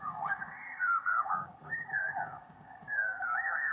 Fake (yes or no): yes